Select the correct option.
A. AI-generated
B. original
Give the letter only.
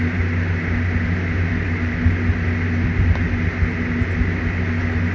B